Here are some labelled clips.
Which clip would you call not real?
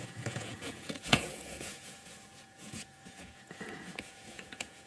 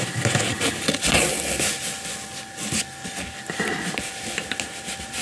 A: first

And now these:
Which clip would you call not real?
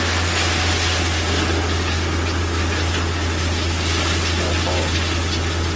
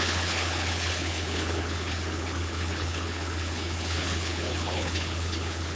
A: second